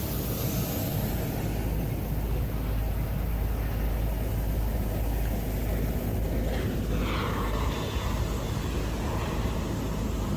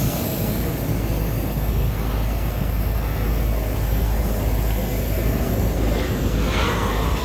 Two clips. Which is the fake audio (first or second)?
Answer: second